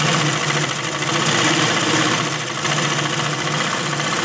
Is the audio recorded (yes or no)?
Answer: yes